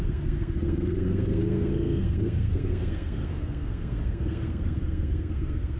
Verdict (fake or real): fake